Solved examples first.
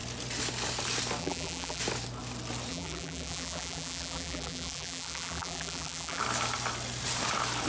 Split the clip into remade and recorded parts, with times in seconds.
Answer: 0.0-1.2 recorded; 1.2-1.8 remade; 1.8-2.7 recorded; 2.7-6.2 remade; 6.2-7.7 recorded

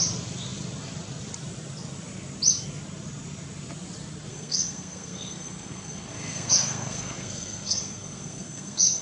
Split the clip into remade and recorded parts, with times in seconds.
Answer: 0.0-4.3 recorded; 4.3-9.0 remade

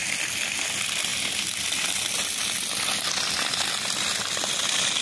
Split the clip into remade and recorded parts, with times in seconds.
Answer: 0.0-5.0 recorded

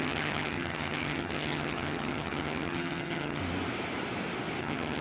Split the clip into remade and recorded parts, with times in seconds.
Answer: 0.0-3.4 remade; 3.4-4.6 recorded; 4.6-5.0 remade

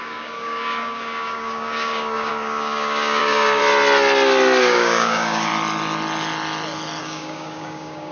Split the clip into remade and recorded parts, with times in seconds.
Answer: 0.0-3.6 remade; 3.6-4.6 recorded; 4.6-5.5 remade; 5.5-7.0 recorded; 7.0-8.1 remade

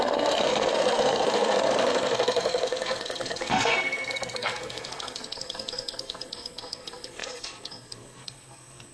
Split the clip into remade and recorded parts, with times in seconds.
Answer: 0.0-8.9 remade

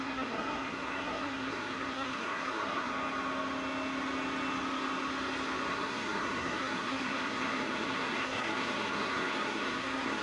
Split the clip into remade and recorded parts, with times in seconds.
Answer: 0.0-2.9 remade; 2.9-5.7 recorded; 5.7-10.2 remade

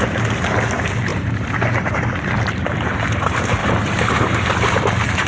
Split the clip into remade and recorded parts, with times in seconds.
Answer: 0.0-3.6 remade; 3.6-4.1 recorded; 4.1-5.3 remade